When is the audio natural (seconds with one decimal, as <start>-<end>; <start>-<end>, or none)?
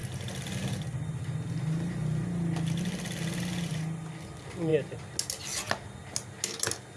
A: 0.0-7.0